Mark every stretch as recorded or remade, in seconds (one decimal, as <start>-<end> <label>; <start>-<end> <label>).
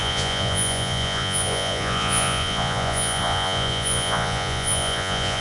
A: 0.0-5.4 remade